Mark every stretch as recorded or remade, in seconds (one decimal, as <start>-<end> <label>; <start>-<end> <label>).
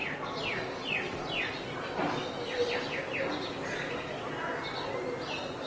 0.0-5.7 recorded